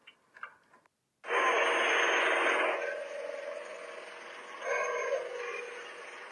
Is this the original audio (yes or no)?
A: yes